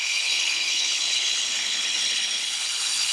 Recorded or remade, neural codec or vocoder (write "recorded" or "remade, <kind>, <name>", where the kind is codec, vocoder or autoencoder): remade, codec, HILCodec